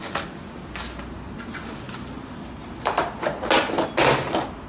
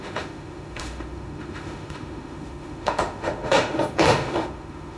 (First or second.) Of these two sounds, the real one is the first